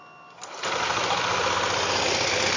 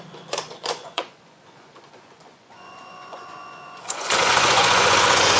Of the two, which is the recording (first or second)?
first